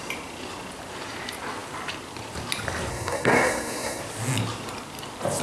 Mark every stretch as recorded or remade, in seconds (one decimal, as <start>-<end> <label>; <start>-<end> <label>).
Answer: 0.0-2.9 recorded; 2.9-4.0 remade; 4.0-5.4 recorded